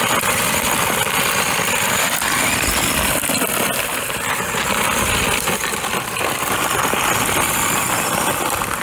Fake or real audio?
real